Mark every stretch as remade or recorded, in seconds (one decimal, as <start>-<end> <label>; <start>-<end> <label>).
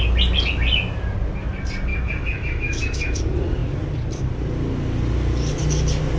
0.0-1.9 recorded; 1.9-3.2 remade; 3.2-6.2 recorded